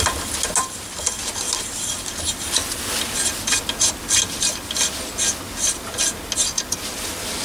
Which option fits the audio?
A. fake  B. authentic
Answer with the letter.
B